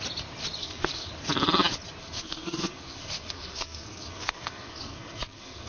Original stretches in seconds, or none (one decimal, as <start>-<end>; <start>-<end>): 0.0-0.6; 1.1-2.0